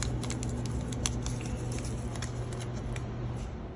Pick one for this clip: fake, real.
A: real